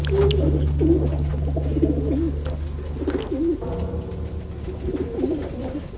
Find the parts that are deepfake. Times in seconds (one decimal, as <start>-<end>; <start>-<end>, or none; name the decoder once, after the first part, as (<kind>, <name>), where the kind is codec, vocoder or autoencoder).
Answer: none